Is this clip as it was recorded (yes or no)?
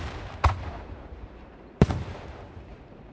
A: no